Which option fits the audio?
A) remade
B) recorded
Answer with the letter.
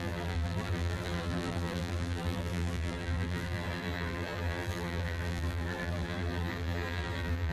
A